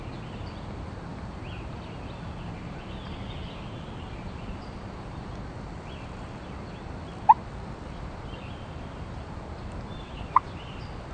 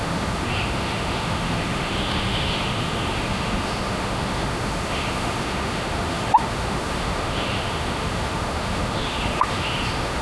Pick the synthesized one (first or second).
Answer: second